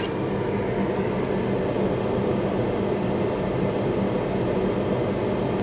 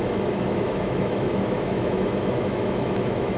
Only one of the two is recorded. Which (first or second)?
first